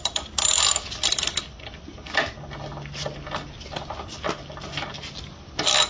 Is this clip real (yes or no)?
yes